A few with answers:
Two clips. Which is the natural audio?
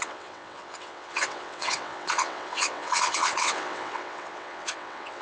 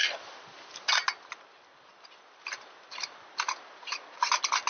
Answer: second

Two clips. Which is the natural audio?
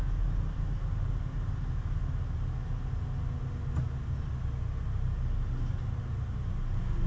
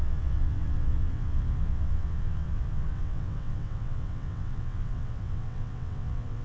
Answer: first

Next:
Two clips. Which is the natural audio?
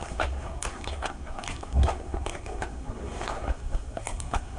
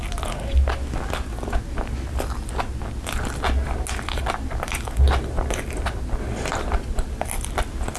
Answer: second